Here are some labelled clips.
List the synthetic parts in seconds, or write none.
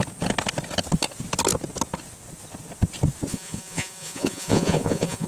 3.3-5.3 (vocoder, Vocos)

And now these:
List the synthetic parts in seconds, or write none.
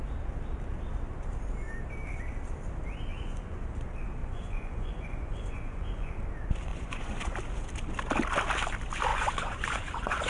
3.1-3.6 (vocoder, Vocos); 4.2-6.1; 6.7-7.4; 9.1-10.3